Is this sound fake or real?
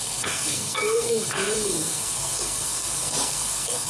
fake